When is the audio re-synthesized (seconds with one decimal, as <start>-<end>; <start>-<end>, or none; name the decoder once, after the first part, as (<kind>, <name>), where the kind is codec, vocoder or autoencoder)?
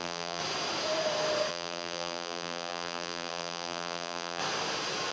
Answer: 0.0-0.4 (vocoder, BigVGAN v2); 1.5-4.4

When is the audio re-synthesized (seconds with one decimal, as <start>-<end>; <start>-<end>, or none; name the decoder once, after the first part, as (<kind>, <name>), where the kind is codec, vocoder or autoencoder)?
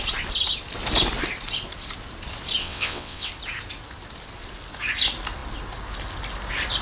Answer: 2.6-3.3 (vocoder, WaveNeXt)